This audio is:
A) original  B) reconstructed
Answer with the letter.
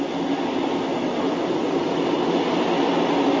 A